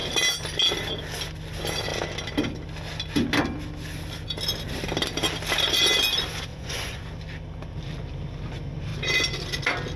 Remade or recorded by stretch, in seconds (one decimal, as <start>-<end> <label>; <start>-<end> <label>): 0.0-6.5 recorded; 6.5-7.0 remade; 7.0-10.0 recorded